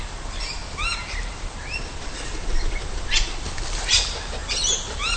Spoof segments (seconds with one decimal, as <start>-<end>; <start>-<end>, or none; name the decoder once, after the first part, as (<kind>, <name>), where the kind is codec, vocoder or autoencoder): none